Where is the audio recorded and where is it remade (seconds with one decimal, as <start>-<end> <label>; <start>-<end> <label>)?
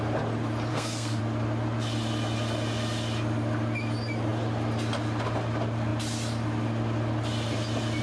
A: 0.0-0.7 recorded; 0.7-1.2 remade; 1.2-8.0 recorded